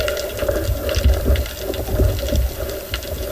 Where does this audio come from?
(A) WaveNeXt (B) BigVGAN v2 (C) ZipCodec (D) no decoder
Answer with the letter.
D